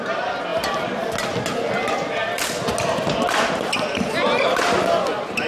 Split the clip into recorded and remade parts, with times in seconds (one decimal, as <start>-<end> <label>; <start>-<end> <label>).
0.0-5.5 recorded